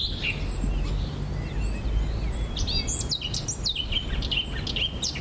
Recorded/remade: recorded